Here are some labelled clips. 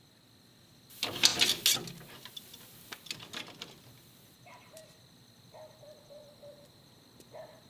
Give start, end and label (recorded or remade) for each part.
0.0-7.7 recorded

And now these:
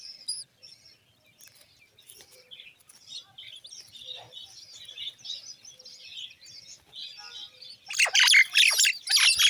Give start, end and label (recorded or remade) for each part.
0.0-9.5 recorded